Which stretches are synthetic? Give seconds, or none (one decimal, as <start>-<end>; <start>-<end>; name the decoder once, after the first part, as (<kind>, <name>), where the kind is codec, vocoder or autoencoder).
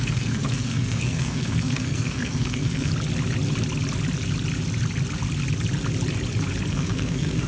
0.0-2.9 (codec, SNAC); 6.7-7.5